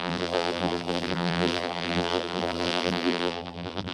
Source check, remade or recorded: remade